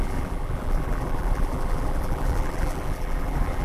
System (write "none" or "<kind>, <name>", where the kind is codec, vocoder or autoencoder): vocoder, BigVGAN v2